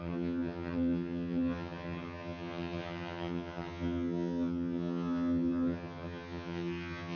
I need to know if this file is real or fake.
fake